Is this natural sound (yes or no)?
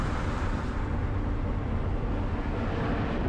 yes